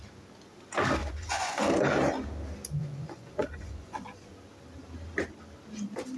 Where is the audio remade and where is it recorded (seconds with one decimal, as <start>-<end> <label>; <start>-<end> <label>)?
0.0-1.0 recorded; 1.0-1.7 remade; 1.7-2.8 recorded; 2.8-4.3 remade; 4.3-6.2 recorded